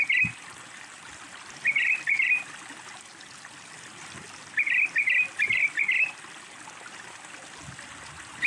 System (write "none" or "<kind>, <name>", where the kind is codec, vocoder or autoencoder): none